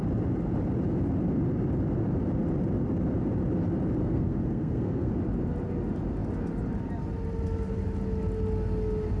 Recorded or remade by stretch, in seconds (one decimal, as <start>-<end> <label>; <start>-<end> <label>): 0.0-4.0 recorded; 4.0-5.1 remade; 5.1-9.2 recorded